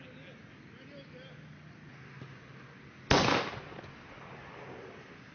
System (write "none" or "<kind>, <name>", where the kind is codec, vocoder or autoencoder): none